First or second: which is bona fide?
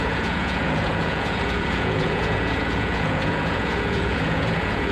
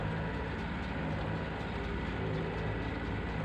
second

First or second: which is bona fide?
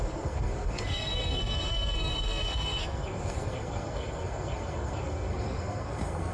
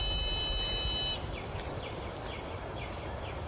second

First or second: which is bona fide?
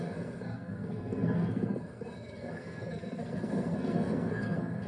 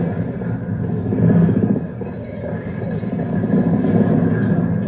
second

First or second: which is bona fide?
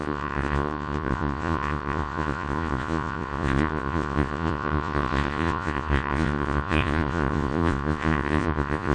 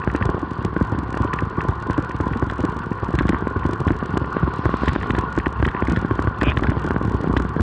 second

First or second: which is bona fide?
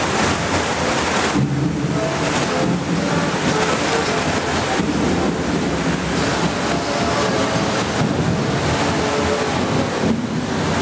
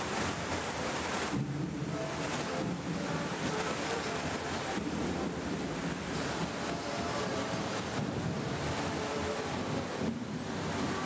first